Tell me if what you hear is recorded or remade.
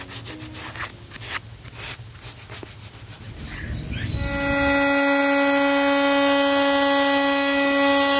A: recorded